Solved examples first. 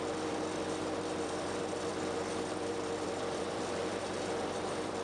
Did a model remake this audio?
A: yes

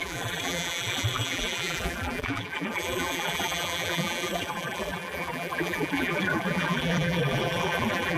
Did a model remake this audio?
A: yes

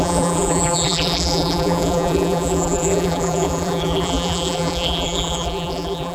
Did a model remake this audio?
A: yes